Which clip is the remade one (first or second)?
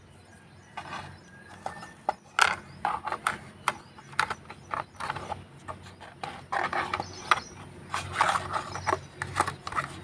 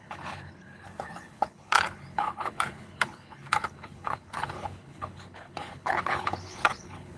second